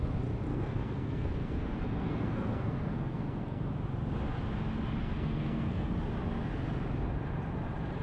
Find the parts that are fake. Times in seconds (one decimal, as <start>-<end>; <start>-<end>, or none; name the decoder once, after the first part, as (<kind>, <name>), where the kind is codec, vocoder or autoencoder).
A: 0.5-3.7 (codec, SNAC); 5.0-5.9